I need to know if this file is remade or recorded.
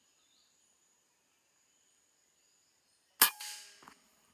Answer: recorded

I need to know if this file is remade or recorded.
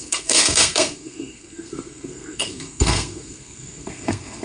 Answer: remade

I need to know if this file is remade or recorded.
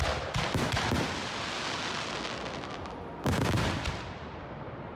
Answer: recorded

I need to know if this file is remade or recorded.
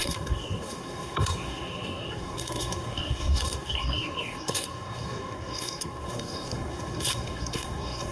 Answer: remade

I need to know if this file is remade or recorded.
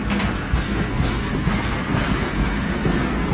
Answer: remade